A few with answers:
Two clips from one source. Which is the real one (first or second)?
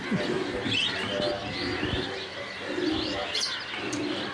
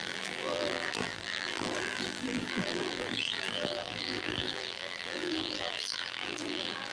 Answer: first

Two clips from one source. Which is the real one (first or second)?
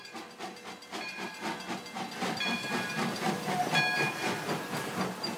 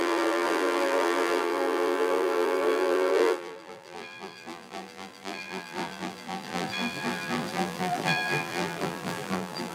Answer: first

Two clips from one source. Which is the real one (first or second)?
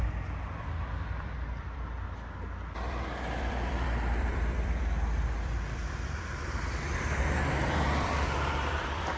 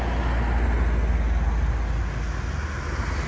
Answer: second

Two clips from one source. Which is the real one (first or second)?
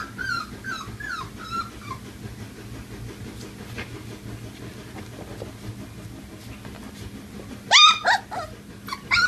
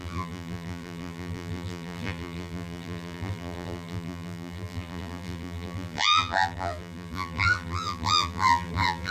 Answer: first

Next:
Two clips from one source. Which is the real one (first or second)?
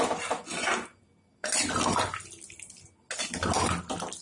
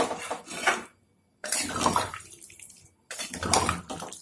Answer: first